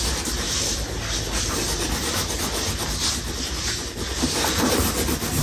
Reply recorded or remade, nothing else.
recorded